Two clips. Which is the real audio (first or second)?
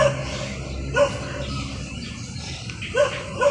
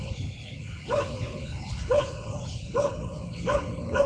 first